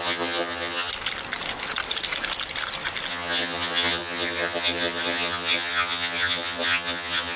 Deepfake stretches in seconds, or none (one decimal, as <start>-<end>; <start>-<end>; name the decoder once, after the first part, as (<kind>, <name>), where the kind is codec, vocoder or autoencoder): 0.0-0.9 (vocoder, HiFi-GAN); 3.1-7.4